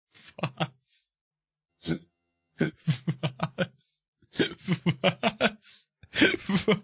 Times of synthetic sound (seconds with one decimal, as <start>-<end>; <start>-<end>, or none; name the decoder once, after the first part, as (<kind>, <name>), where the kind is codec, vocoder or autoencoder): 1.7-2.7 (vocoder, HiFi-GAN)